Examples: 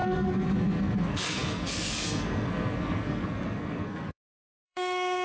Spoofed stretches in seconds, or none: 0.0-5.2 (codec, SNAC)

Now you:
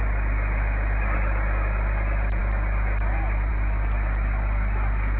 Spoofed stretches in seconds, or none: none

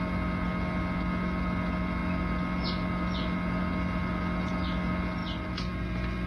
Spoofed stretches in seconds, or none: none